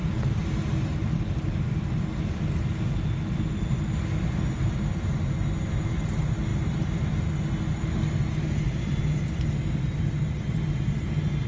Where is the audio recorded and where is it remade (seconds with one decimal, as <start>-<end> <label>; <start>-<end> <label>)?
0.0-11.5 recorded